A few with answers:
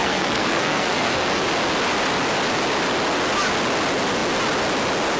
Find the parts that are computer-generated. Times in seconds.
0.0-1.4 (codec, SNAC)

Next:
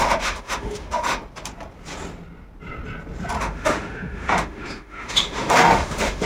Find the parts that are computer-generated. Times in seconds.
0.0-1.2 (autoencoder, DAC-VAE); 3.4-6.3